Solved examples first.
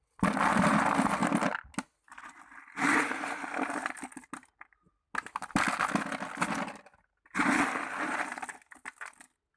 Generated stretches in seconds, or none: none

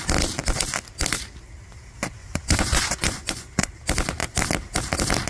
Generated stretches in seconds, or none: 2.2-3.7 (vocoder, Vocos)